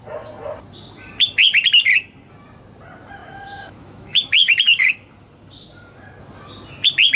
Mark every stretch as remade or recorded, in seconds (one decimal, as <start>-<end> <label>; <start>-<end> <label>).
0.0-3.2 recorded; 3.2-5.1 remade; 5.1-7.2 recorded